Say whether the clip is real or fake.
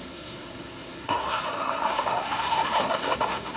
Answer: fake